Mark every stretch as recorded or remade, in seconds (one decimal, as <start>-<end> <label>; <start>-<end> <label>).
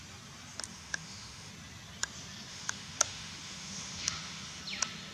0.0-0.7 recorded; 0.7-1.5 remade; 1.5-2.5 recorded; 2.5-4.6 remade; 4.6-5.1 recorded